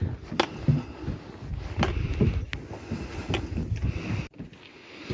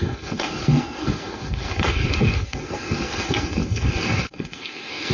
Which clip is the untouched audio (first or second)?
first